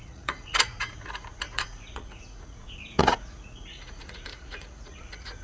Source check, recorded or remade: remade